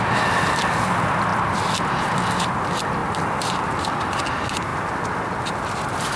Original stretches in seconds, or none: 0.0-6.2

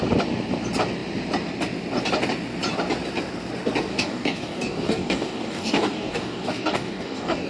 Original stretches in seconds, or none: 0.0-3.9

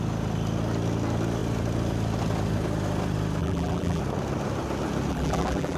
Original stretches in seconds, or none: 0.0-3.4; 4.0-5.1

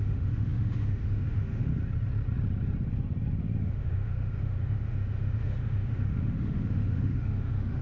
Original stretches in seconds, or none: 1.7-3.6

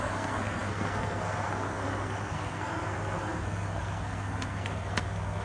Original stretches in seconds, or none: none

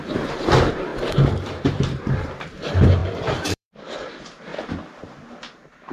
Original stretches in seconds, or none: 4.5-5.0

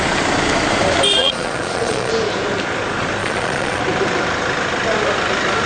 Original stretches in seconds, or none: 0.0-1.2; 2.1-3.2; 3.8-5.7